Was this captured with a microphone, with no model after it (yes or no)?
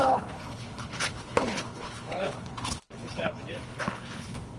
no